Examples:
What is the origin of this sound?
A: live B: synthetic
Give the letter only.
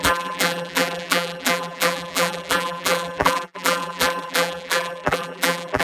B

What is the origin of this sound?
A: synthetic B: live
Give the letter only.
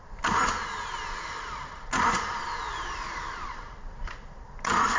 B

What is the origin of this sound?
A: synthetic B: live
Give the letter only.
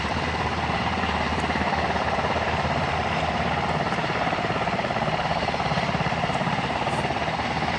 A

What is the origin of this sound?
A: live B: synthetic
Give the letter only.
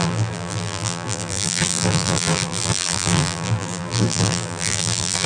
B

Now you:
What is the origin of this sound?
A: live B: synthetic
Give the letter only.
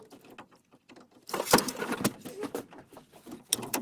B